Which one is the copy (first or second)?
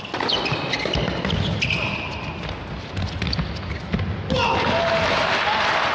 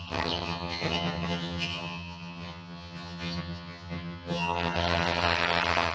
second